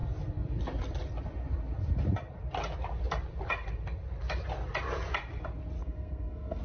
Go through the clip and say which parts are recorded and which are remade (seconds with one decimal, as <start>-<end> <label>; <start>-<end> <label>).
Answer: 0.0-5.8 recorded; 5.8-6.6 remade